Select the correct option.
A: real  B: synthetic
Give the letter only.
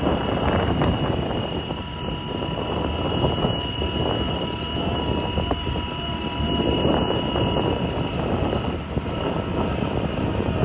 A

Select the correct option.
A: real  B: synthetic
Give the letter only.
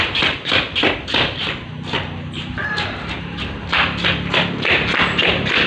A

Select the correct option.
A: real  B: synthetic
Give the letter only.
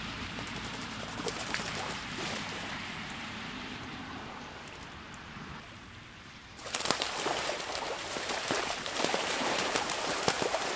B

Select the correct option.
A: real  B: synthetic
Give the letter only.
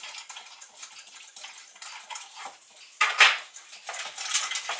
A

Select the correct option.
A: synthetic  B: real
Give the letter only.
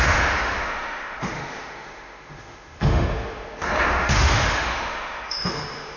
A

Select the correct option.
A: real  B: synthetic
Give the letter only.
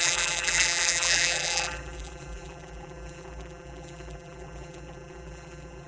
B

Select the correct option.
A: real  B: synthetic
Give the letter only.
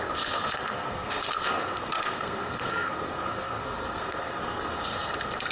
B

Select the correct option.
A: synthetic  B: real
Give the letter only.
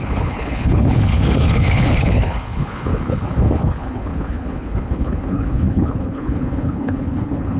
A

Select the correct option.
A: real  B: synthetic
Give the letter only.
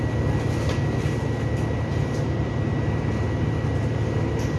A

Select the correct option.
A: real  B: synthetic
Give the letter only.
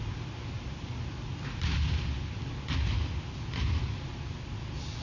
A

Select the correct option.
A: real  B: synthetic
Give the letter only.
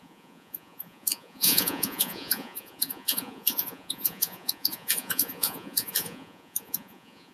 B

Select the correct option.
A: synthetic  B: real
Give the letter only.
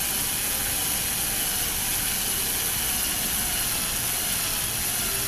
B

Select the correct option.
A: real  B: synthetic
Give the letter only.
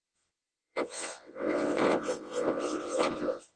B